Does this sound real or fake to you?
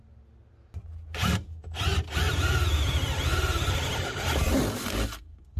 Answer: real